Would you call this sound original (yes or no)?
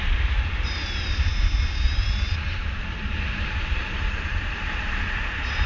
no